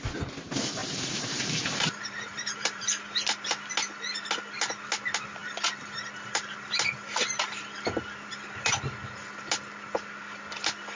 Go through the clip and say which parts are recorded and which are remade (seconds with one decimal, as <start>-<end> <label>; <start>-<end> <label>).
0.0-0.8 recorded; 0.8-2.8 remade; 2.8-11.0 recorded